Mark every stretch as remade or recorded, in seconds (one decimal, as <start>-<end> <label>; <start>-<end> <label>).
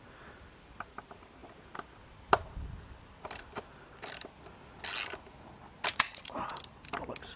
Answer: 0.0-5.9 recorded; 5.9-6.5 remade; 6.5-7.4 recorded